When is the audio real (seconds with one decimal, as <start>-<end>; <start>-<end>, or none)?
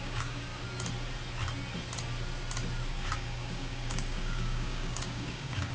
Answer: 0.5-2.9